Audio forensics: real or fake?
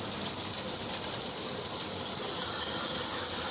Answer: fake